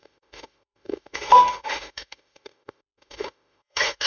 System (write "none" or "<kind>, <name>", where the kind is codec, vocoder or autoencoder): autoencoder, DAC-VAE